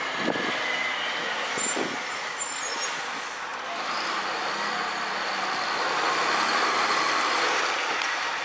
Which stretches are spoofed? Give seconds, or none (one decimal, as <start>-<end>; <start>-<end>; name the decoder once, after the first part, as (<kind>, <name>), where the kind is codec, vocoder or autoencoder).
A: none